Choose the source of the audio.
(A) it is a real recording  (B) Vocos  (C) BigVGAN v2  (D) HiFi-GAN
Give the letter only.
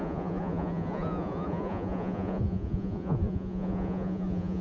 B